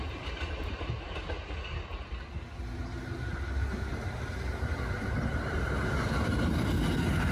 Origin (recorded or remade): recorded